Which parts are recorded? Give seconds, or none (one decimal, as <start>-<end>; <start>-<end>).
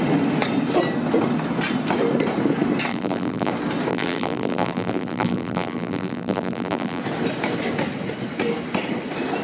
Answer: 0.0-2.9; 3.5-3.9; 7.0-9.4